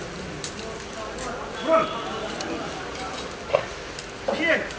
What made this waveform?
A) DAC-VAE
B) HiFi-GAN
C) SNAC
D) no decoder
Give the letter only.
D